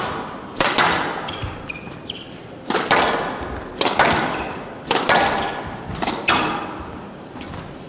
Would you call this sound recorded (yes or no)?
yes